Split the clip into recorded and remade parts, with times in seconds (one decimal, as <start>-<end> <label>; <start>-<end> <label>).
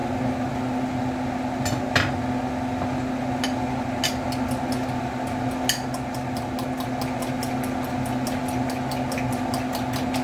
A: 0.0-10.2 recorded